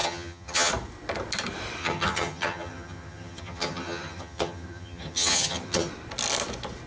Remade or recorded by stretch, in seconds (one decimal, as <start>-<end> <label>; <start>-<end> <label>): 0.0-0.7 remade; 0.7-1.8 recorded; 1.8-5.9 remade; 5.9-6.9 recorded